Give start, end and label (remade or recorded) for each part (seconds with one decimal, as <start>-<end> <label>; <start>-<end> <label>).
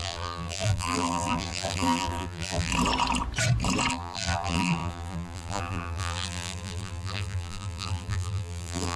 0.0-2.7 remade; 2.7-3.9 recorded; 3.9-9.0 remade